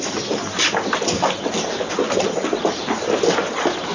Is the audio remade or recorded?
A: recorded